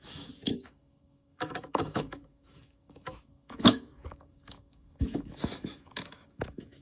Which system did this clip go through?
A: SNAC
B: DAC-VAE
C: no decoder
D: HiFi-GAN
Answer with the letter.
B